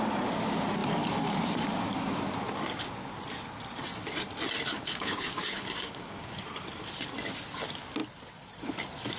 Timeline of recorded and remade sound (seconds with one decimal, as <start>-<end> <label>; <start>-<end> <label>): 0.0-4.7 recorded; 4.7-6.4 remade; 6.4-9.2 recorded